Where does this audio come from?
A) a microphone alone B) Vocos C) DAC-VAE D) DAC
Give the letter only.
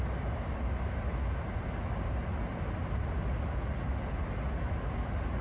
A